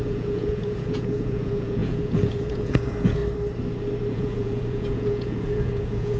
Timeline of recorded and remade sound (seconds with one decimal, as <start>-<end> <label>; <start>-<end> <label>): 0.0-3.2 remade; 3.2-4.1 recorded; 4.1-6.2 remade

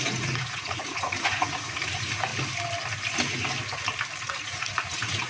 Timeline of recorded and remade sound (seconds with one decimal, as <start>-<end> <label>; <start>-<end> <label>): 0.0-2.3 remade; 2.3-4.2 recorded; 4.2-5.3 remade